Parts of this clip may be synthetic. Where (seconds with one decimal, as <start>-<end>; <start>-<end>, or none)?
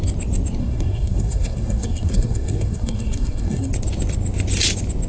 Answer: 0.6-3.7